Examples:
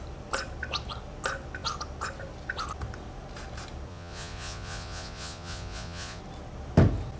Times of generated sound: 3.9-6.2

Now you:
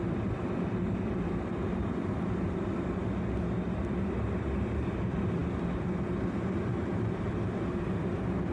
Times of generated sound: 0.0-3.0; 4.0-5.4; 6.3-8.5